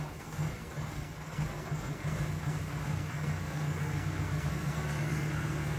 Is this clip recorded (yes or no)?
no